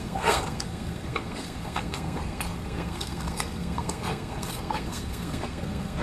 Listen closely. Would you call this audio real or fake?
fake